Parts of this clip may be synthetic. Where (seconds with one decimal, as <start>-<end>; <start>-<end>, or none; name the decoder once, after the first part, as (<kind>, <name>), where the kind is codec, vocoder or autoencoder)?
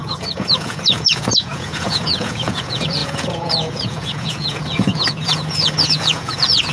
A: 0.0-6.7 (vocoder, Vocos)